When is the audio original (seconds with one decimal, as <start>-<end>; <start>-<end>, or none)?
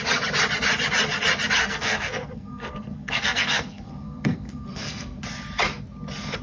0.0-1.6; 5.2-6.4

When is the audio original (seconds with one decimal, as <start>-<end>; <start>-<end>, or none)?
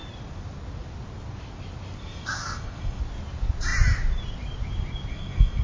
0.0-2.0; 3.0-5.1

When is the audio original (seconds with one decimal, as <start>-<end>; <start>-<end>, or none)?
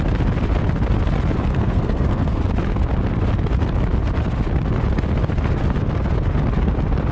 0.0-1.5; 2.4-7.1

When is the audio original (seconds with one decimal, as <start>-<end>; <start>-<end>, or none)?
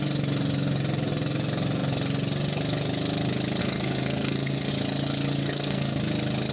0.0-3.6; 4.7-5.4; 6.0-6.5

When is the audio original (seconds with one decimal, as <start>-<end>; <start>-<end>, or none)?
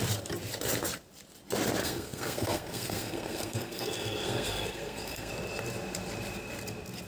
0.0-1.8; 5.3-7.1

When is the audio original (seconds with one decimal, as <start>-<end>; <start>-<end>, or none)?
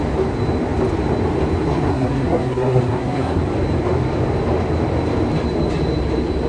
0.0-1.9; 3.4-6.5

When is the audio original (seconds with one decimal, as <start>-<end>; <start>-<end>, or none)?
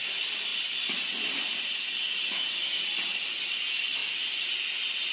0.0-5.1